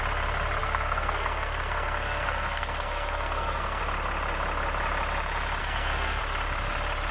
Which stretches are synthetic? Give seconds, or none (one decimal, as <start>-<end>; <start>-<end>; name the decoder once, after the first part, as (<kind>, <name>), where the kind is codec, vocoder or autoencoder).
0.6-3.8 (codec, SNAC); 5.6-6.2